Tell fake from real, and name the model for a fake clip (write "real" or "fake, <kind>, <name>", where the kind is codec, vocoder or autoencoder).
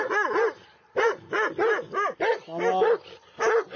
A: real